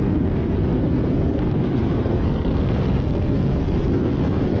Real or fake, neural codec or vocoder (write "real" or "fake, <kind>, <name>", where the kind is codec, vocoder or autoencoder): fake, codec, SNAC